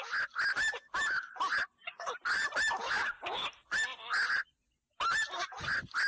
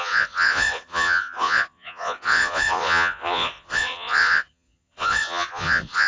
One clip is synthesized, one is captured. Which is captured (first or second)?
first